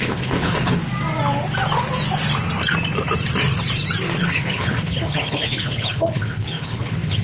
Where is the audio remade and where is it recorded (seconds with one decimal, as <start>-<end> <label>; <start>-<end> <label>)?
0.0-0.8 remade; 0.8-4.2 recorded; 4.2-7.2 remade